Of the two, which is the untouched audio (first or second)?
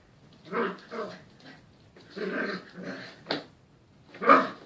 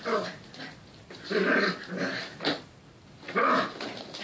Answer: first